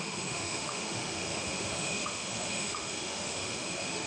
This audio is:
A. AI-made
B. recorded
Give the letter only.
A